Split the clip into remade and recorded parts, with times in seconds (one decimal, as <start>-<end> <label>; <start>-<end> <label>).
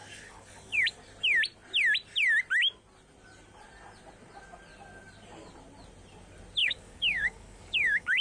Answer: 0.0-0.9 remade; 0.9-6.6 recorded; 6.6-8.2 remade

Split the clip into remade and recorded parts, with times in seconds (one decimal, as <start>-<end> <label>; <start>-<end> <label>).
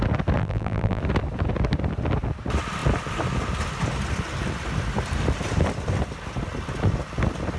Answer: 0.0-0.4 recorded; 0.4-1.0 remade; 1.0-7.6 recorded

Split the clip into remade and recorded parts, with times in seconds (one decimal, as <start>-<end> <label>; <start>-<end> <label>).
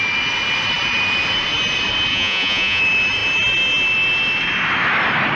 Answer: 0.0-2.1 recorded; 2.1-2.8 remade; 2.8-5.4 recorded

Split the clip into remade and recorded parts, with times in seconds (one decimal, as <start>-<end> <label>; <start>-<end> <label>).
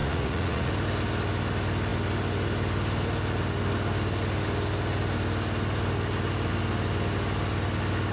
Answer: 0.0-0.7 remade; 0.7-8.1 recorded